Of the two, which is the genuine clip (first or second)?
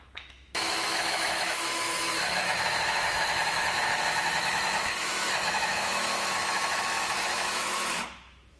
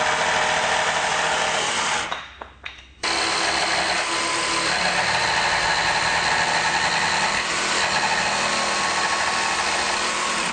second